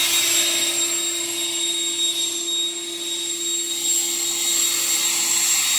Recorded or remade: recorded